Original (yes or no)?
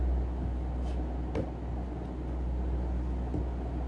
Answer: yes